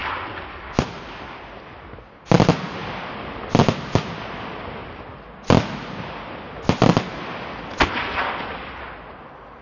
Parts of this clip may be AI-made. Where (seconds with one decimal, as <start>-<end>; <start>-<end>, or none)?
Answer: none